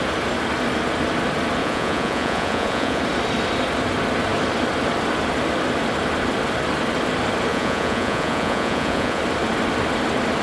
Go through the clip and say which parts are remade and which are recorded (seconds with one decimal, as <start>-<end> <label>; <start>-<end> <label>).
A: 0.0-1.6 recorded; 1.6-3.0 remade; 3.0-7.5 recorded; 7.5-9.2 remade; 9.2-10.4 recorded